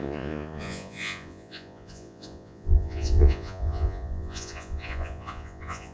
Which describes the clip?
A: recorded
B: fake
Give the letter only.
B